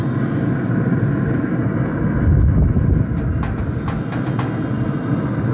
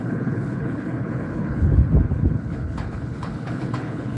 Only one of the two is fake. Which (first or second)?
second